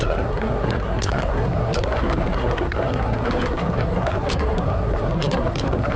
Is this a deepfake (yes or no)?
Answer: yes